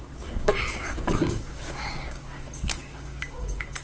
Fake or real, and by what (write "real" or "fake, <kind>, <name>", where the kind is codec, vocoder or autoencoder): fake, codec, DAC